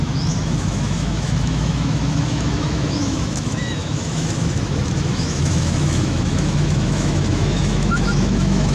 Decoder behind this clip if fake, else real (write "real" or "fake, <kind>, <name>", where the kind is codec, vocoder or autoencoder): fake, autoencoder, DAC-VAE